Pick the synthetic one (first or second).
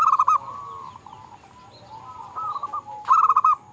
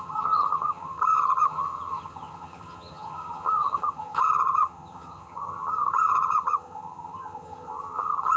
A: second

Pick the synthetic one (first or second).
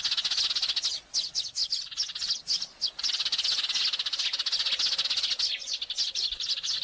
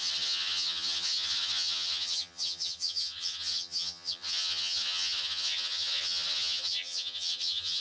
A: second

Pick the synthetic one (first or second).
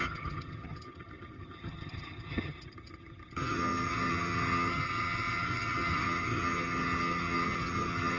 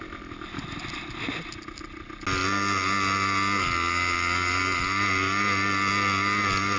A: first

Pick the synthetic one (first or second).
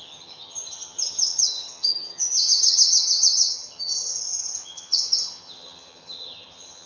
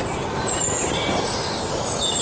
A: first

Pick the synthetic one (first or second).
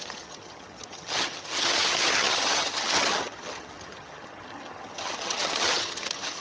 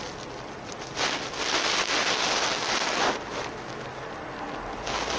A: first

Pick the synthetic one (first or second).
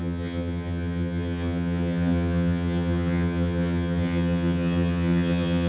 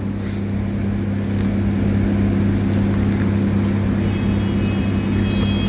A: first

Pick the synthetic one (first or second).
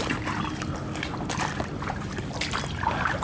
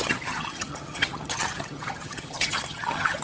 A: second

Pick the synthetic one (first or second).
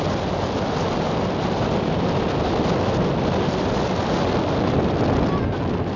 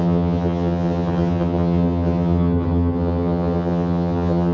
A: second